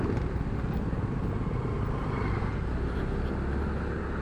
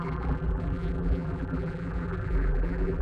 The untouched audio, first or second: first